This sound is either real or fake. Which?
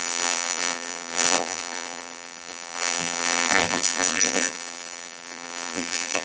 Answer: fake